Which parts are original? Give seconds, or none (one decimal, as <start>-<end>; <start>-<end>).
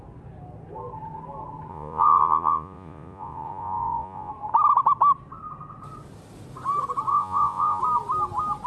0.0-1.7; 4.3-7.1; 7.8-8.7